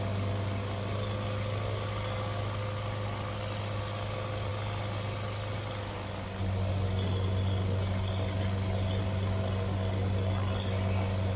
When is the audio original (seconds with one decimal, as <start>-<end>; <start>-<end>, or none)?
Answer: 0.0-11.4